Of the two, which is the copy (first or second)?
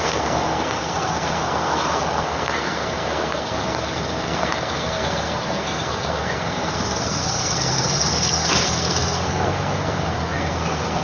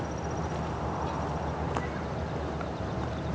first